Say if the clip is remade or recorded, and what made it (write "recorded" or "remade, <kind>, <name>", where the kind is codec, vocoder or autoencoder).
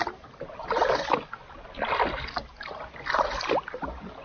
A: recorded